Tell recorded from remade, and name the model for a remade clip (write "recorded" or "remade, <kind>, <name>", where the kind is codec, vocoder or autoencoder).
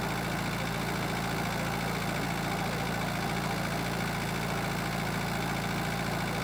recorded